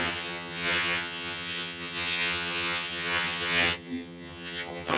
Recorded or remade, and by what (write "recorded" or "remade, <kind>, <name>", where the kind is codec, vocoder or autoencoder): remade, vocoder, HiFi-GAN